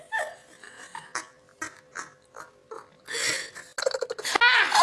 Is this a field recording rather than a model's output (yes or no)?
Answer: yes